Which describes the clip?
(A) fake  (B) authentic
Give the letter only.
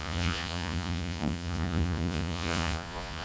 A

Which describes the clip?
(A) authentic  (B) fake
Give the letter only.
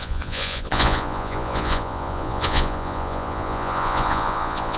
B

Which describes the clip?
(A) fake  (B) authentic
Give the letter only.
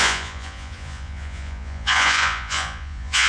A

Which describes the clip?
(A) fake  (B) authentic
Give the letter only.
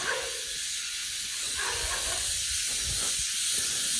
A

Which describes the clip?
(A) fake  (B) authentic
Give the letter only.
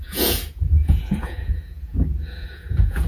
A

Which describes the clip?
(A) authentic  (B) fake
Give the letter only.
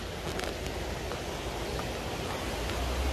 A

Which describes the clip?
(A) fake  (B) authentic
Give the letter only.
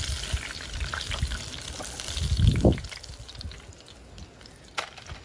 B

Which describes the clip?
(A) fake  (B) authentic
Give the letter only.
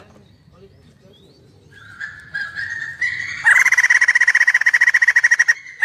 B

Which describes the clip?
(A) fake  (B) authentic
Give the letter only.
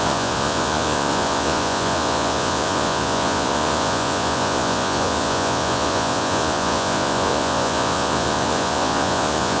A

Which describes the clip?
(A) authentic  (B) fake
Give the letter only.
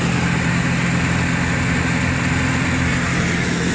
A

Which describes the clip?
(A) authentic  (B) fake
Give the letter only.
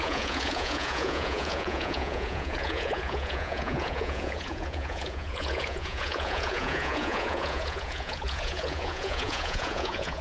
B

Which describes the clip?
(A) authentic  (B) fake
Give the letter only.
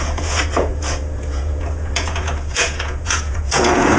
B